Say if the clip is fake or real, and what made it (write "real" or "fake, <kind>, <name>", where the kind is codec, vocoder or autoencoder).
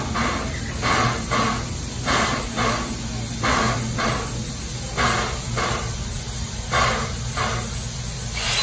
real